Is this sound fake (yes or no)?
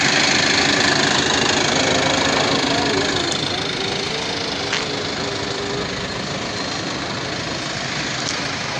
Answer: no